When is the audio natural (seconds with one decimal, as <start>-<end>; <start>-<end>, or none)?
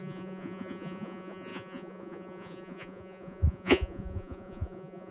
none